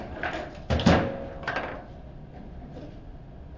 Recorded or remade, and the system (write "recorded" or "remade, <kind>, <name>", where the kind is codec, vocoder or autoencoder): recorded